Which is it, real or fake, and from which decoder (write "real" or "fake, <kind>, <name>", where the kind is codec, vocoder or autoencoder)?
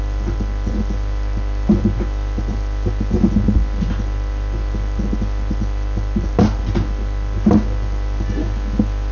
real